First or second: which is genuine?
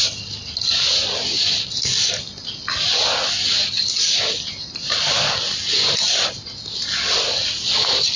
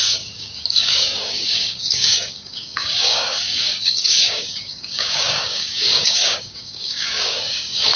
first